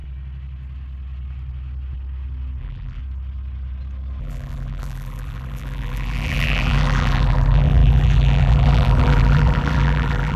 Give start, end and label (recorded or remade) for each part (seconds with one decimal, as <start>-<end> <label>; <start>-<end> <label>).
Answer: 0.0-2.6 recorded; 2.6-3.0 remade; 3.0-4.2 recorded; 4.2-10.4 remade